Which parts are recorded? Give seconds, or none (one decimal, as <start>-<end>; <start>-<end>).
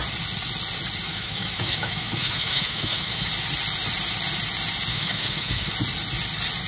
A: 0.0-1.1; 3.3-4.9; 5.7-6.7